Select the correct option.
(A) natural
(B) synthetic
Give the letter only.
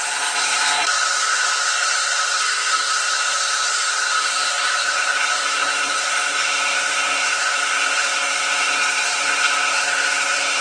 B